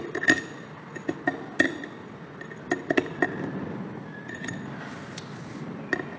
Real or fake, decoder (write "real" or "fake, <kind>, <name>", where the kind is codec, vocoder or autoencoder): real